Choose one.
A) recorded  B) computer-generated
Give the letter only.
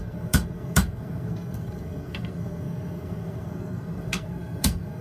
B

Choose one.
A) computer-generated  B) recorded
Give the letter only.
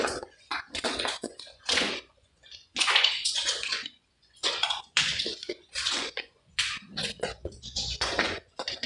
A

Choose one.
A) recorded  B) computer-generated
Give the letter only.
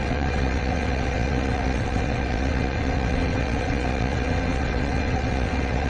B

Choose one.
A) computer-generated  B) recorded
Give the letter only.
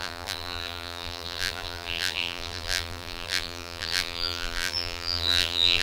A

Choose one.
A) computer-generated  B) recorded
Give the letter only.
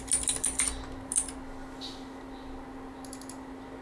B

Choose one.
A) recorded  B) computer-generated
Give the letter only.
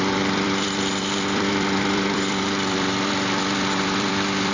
B